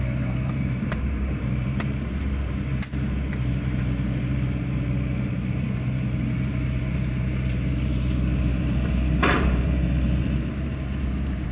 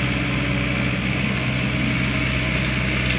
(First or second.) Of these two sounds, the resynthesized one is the first